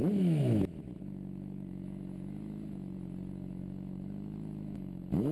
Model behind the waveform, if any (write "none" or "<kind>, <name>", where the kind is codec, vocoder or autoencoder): autoencoder, DAC-VAE